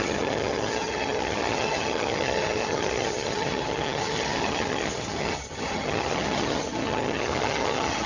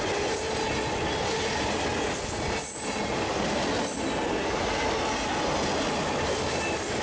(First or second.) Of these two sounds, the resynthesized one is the first